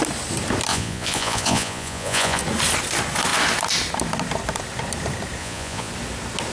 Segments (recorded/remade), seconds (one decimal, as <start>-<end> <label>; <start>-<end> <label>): 0.0-0.7 recorded; 0.7-2.4 remade; 2.4-5.4 recorded; 5.4-5.9 remade; 5.9-6.5 recorded